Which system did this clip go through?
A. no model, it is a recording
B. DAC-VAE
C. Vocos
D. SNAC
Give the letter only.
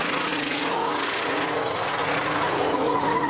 C